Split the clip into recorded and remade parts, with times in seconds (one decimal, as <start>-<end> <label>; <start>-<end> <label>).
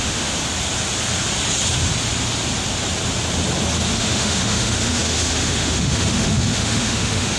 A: 0.0-0.4 remade; 0.4-4.0 recorded; 4.0-7.4 remade